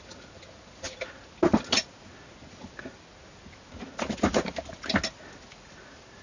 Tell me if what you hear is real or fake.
real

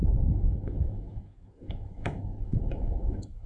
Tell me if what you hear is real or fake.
fake